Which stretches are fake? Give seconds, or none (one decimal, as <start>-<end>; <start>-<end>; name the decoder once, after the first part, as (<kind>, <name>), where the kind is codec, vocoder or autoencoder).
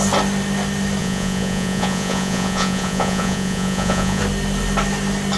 1.0-4.2 (vocoder, Vocos)